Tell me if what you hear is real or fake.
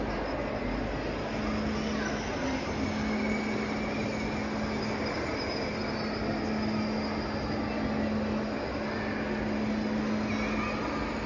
real